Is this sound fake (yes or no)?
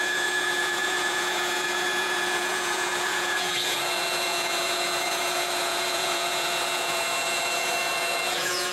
yes